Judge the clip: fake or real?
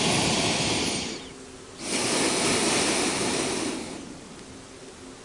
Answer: real